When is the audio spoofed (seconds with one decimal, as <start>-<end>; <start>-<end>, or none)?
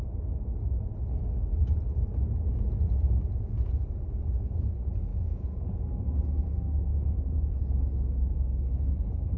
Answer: 5.1-5.6; 6.9-7.6